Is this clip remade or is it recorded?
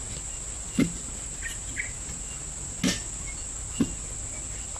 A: recorded